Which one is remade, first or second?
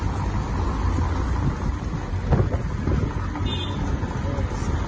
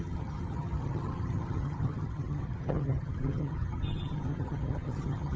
second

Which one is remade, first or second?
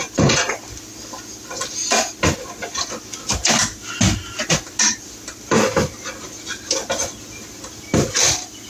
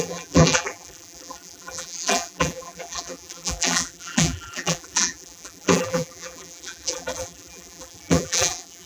second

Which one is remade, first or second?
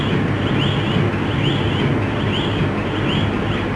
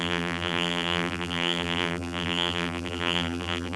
second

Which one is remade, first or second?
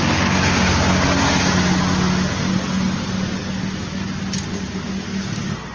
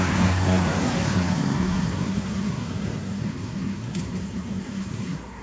second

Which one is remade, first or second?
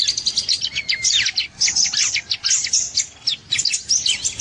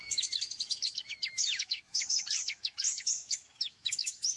second